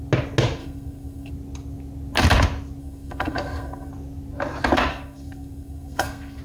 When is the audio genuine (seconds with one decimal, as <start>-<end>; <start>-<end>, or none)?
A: 0.0-0.6; 1.3-2.8; 3.9-4.9